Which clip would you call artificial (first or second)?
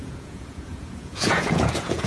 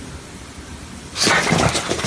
first